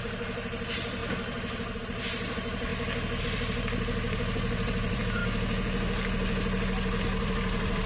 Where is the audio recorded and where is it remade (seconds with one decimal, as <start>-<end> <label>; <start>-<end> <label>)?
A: 0.0-2.7 remade; 2.7-3.2 recorded; 3.2-5.2 remade; 5.2-7.0 recorded; 7.0-7.9 remade